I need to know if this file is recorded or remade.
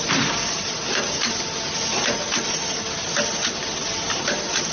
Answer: recorded